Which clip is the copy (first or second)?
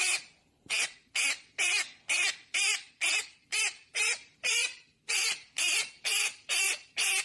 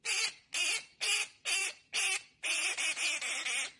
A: first